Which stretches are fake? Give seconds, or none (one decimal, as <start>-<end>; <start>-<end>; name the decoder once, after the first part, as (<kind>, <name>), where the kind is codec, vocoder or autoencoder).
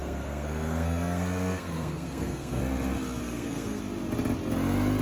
0.0-2.6 (codec, SNAC); 3.2-3.8